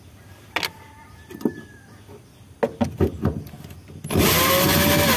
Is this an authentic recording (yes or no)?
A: yes